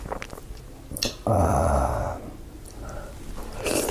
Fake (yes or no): no